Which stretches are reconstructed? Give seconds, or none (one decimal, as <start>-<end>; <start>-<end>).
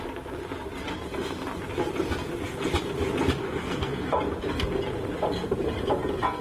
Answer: 3.4-4.2